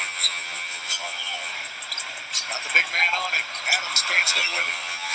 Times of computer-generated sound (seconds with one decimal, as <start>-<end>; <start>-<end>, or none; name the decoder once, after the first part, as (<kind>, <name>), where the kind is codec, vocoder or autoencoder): 0.0-1.5 (vocoder, HiFi-GAN); 4.3-5.1